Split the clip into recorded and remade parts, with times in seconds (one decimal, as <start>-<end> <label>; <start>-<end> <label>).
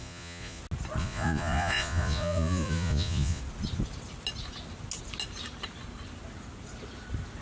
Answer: 0.0-0.6 remade; 0.6-1.0 recorded; 1.0-3.4 remade; 3.4-7.4 recorded